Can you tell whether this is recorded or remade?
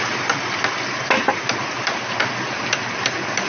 recorded